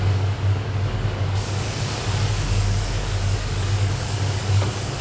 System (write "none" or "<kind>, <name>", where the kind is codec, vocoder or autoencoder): codec, DAC